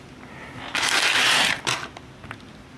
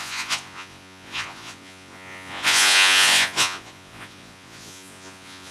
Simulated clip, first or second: second